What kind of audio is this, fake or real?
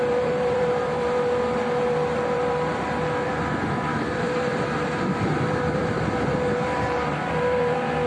fake